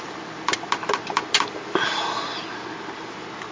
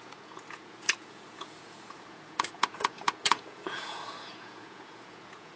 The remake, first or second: second